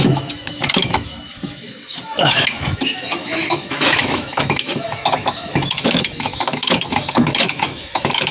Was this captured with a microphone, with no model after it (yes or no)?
no